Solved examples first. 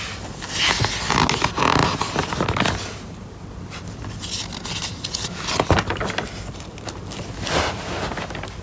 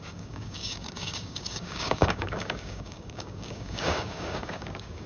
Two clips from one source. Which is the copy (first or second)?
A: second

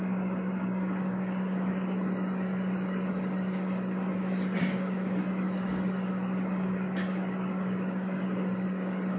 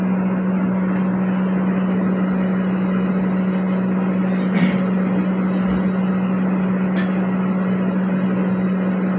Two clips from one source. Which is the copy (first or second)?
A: first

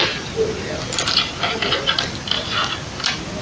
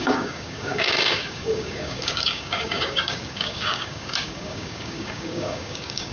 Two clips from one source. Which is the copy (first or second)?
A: second